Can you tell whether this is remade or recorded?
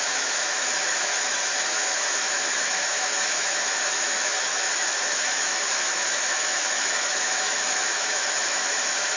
remade